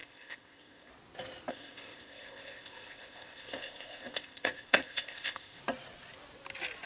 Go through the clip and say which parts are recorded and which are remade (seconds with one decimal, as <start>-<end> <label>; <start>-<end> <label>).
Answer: 0.0-0.9 remade; 0.9-1.5 recorded; 1.5-5.6 remade; 5.6-6.9 recorded